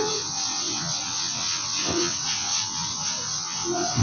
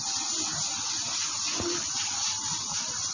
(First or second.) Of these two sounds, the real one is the second